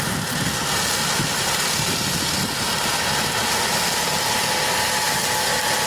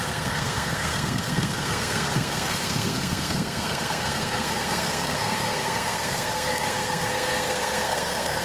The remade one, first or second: second